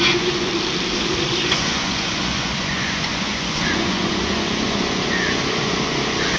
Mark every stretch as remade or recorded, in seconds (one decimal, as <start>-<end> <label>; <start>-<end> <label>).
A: 0.0-0.5 remade; 0.5-1.4 recorded; 1.4-6.4 remade